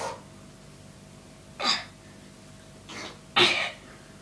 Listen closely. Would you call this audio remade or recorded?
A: recorded